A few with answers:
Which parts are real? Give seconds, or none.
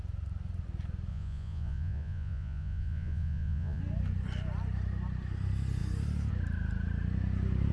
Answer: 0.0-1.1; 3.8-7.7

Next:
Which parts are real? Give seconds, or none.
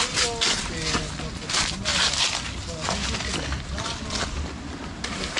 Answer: 0.0-5.4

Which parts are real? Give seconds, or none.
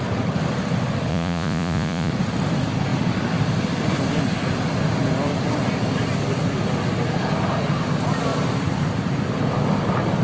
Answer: 0.0-1.1; 2.1-10.2